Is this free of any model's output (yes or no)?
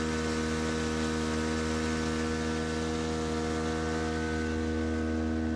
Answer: yes